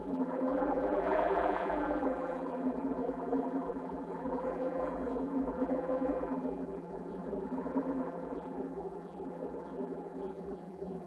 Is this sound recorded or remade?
remade